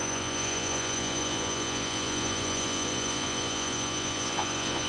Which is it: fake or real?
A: fake